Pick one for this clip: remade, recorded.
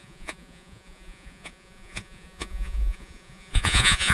remade